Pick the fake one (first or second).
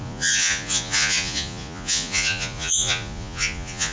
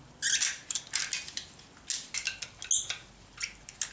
first